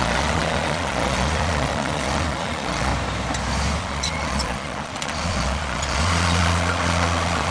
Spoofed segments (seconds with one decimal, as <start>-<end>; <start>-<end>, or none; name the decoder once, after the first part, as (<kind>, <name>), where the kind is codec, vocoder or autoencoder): 0.0-2.9 (vocoder, Vocos); 3.8-7.5